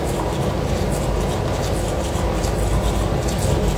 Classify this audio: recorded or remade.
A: recorded